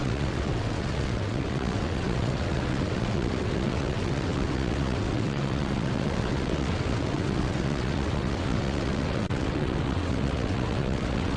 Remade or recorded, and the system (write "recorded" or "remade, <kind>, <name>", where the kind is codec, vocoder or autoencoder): remade, vocoder, WaveNeXt